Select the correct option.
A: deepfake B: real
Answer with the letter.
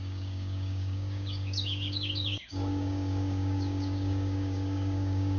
A